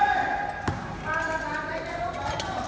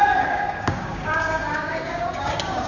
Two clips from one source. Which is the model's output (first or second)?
second